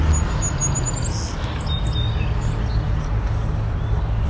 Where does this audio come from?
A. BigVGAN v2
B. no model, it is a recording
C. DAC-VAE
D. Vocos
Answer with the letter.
B